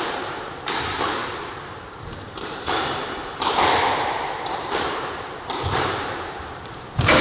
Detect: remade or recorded remade